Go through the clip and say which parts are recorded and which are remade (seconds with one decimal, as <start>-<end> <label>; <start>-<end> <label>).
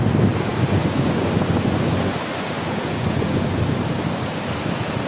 0.0-0.5 recorded; 0.5-3.6 remade; 3.6-5.1 recorded